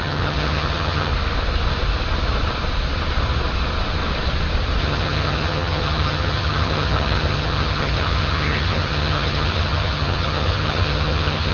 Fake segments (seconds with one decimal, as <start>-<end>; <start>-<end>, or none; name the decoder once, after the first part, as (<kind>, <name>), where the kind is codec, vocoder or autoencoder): 0.0-1.1 (vocoder, HiFi-GAN); 4.8-11.5